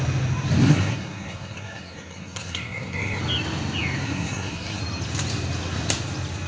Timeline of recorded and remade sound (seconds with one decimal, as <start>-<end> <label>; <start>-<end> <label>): 0.0-0.6 recorded; 0.6-3.2 remade; 3.2-4.0 recorded; 4.0-4.8 remade; 4.8-6.5 recorded